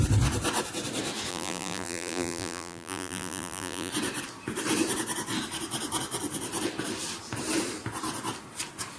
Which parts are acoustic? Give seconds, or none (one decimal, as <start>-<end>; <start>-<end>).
0.0-1.3; 3.9-9.0